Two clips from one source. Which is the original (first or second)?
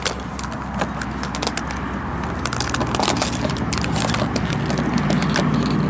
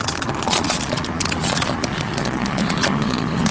first